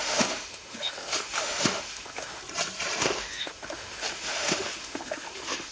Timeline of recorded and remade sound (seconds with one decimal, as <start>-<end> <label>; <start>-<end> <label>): 0.0-2.4 remade; 2.4-3.0 recorded; 3.0-5.7 remade

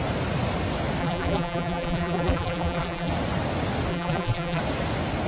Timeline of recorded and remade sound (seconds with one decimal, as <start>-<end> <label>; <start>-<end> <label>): 0.0-1.0 recorded; 1.0-3.1 remade; 3.1-3.9 recorded; 3.9-4.6 remade; 4.6-5.3 recorded

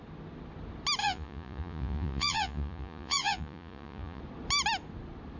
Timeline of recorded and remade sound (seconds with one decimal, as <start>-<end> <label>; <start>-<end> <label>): 0.0-1.0 recorded; 1.0-4.2 remade; 4.2-5.4 recorded

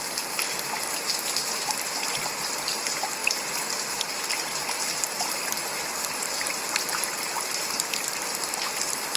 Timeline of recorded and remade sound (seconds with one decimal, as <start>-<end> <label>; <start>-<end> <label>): 0.0-9.2 recorded

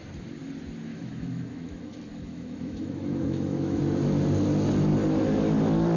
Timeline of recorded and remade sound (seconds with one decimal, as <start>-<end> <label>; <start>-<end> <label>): 0.0-0.9 recorded; 0.9-3.8 remade; 3.8-6.0 recorded

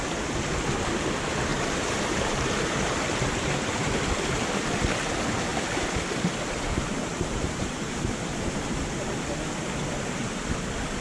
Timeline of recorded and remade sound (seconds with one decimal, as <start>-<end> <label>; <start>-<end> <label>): 0.0-1.5 recorded; 1.5-3.9 remade; 3.9-7.1 recorded; 7.1-9.1 remade; 9.1-11.0 recorded

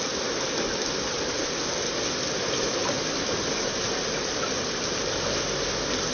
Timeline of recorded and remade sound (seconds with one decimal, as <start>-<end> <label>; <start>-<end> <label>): 0.0-6.1 recorded